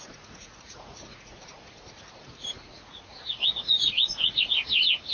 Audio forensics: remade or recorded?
remade